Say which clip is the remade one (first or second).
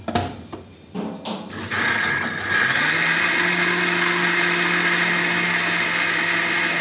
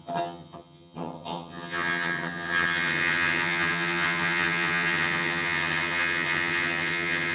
second